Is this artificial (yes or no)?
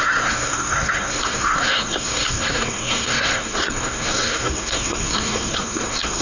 yes